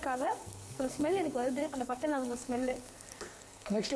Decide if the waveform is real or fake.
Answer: fake